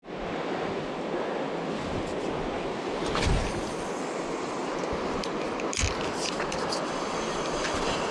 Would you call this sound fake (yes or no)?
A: no